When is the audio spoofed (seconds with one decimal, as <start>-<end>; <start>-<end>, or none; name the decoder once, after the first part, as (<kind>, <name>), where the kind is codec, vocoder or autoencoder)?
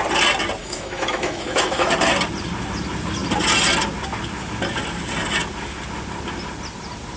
0.6-1.9 (autoencoder, DAC-VAE)